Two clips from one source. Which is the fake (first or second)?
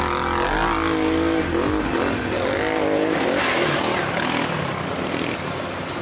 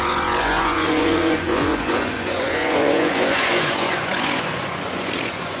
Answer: second